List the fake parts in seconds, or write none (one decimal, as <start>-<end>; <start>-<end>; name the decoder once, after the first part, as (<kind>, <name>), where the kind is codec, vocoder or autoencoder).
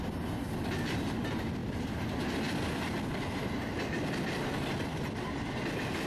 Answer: none